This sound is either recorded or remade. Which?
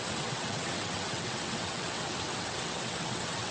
remade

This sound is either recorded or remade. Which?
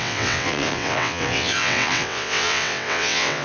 remade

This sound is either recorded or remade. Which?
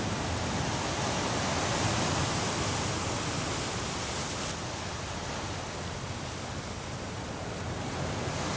recorded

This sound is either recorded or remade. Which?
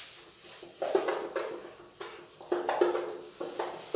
recorded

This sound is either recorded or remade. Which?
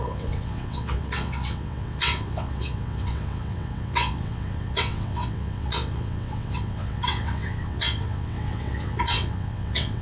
remade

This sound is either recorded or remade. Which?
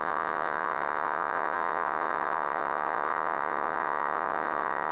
remade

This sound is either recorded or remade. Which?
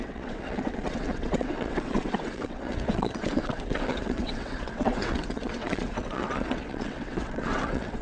remade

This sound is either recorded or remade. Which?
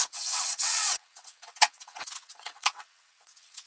remade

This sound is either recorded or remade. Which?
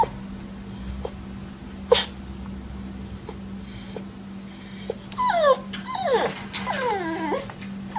recorded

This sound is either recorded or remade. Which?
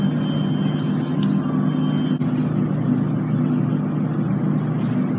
recorded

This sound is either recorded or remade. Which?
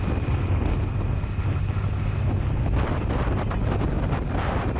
recorded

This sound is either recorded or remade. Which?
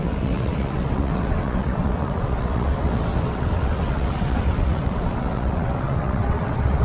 remade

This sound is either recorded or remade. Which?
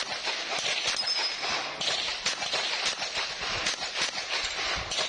recorded